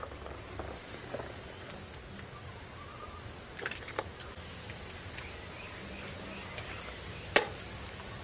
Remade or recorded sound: recorded